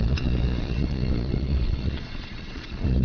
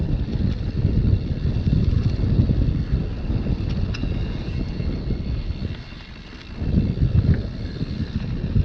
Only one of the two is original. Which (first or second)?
second